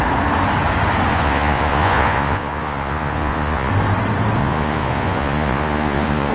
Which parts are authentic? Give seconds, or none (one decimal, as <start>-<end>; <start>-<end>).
0.0-1.1; 3.7-4.4